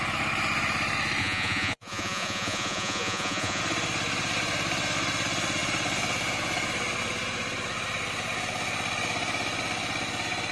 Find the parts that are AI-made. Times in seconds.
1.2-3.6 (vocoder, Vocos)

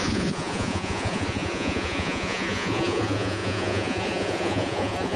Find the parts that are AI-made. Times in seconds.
0.0-5.2 (vocoder, Vocos)

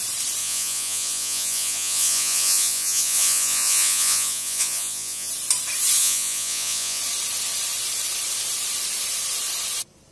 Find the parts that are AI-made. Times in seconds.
0.4-5.3 (vocoder, Vocos); 6.0-7.0

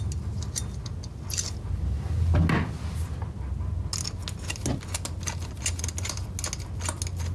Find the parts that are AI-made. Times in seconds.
none

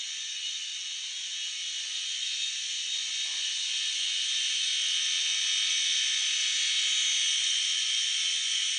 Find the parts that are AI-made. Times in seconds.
0.0-0.7 (vocoder, Vocos); 1.8-4.7; 5.7-6.2; 7.4-8.8